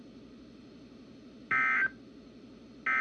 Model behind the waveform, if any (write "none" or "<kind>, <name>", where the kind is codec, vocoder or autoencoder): none